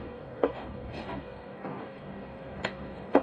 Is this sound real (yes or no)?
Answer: no